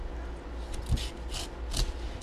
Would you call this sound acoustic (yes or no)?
yes